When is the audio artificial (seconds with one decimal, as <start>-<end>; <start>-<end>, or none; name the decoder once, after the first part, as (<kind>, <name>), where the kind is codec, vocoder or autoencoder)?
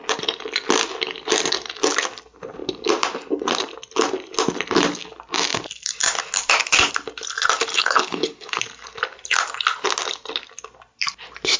7.7-8.6 (codec, HILCodec)